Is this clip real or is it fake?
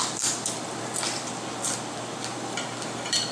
real